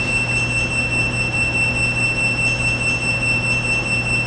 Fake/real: real